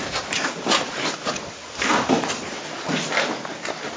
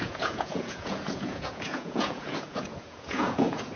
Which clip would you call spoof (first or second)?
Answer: second